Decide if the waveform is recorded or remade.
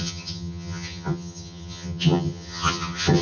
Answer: remade